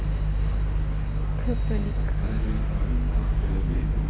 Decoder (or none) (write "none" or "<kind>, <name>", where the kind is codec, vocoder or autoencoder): none